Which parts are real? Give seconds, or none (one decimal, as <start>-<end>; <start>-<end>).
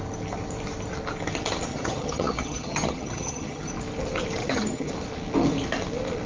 0.0-1.7; 3.7-4.4; 4.9-6.3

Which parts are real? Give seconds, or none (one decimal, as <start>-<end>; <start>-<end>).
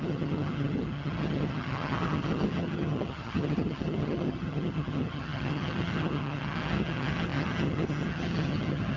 none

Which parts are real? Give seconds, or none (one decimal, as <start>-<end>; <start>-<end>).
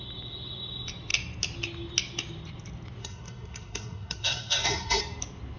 0.0-3.0; 5.0-5.6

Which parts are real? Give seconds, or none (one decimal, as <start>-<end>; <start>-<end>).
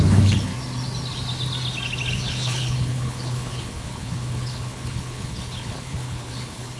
0.5-2.1